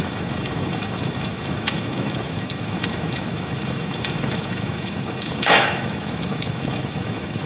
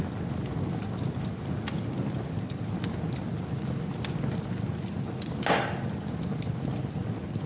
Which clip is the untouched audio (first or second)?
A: second